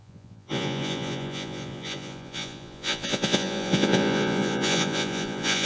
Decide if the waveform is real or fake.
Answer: fake